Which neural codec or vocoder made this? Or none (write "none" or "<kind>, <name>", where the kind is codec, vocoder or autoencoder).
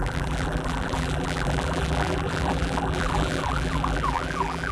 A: vocoder, BigVGAN v2